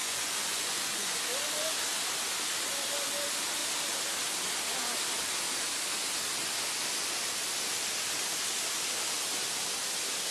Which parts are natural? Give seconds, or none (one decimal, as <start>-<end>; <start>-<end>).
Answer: 1.2-10.3

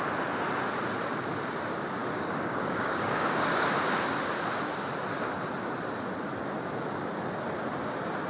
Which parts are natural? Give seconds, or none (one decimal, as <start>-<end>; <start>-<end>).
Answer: 0.0-2.0; 3.6-8.3

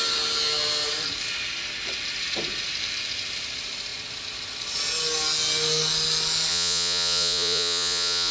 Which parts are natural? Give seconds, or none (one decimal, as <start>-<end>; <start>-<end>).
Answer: 0.0-6.5

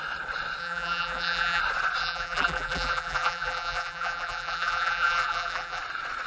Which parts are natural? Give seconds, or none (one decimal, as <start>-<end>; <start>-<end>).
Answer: 0.0-0.6; 1.6-2.0; 5.8-6.3